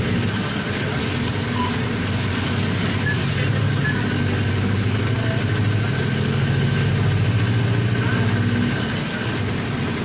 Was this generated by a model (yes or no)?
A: no